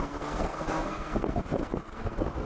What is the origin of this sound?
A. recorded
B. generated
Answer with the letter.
B